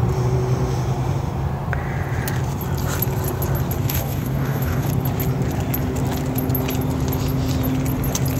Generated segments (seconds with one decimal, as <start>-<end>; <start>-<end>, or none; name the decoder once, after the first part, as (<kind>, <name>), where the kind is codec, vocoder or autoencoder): 3.8-4.9 (codec, DAC)